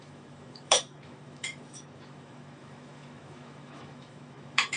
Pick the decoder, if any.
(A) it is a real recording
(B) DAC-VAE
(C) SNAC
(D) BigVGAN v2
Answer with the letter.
B